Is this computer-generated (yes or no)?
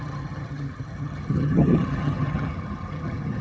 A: yes